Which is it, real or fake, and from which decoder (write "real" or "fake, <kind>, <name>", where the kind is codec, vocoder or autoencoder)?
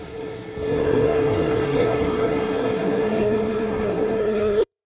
fake, codec, SNAC